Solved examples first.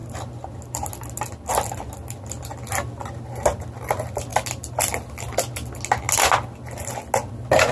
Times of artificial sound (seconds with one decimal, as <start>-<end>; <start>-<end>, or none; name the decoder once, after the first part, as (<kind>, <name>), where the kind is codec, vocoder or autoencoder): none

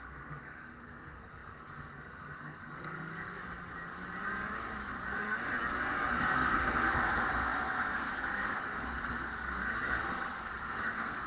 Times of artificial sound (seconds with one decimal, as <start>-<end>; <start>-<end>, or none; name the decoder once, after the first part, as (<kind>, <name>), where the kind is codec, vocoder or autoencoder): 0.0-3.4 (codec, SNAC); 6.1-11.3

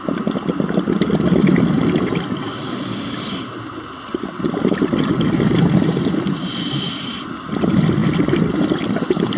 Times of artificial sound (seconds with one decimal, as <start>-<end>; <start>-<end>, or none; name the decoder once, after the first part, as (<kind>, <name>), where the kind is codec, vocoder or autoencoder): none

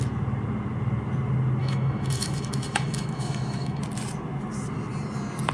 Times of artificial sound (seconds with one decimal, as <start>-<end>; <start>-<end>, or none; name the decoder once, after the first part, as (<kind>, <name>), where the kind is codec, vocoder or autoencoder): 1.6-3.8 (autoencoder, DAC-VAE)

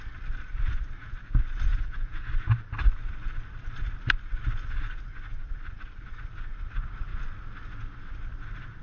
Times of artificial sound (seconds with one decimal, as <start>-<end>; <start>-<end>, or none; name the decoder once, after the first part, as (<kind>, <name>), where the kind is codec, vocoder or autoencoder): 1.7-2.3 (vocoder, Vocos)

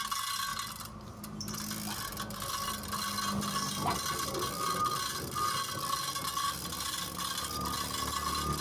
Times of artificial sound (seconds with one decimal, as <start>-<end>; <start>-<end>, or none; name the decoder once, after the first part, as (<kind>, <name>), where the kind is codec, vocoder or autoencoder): none